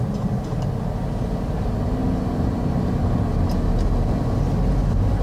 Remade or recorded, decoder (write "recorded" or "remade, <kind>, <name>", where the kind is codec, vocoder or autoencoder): recorded